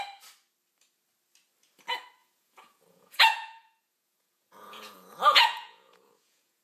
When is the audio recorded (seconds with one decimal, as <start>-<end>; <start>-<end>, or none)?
0.0-2.2